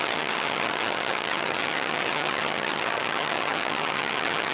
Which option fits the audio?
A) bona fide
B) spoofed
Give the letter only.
B